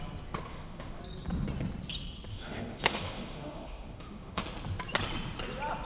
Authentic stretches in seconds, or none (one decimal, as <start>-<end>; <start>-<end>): 0.0-0.5; 1.0-2.3; 4.4-5.8